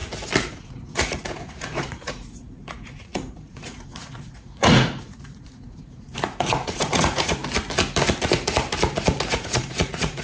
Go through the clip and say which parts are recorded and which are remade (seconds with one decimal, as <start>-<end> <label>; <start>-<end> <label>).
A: 0.0-0.5 recorded; 0.5-7.4 remade; 7.4-9.3 recorded; 9.3-10.2 remade